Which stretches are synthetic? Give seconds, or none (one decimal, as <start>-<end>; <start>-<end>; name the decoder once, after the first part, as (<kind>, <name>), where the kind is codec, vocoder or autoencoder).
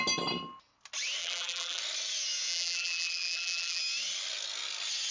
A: 1.2-1.8 (vocoder, BigVGAN v2); 2.5-3.8